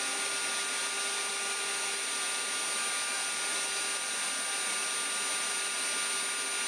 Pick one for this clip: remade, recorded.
recorded